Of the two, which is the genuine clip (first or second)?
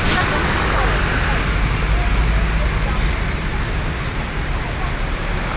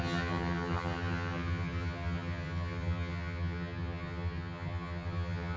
first